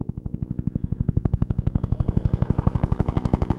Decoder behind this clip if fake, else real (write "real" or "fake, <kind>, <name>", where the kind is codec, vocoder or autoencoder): fake, codec, SNAC